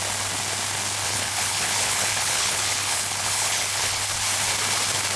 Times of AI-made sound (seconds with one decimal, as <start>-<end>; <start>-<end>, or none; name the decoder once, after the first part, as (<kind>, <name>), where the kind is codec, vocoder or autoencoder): 1.0-4.0 (codec, HILCodec)